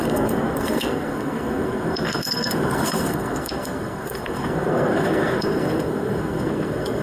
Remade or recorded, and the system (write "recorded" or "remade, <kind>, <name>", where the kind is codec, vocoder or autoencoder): remade, codec, SNAC